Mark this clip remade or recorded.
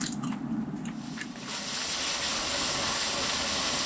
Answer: recorded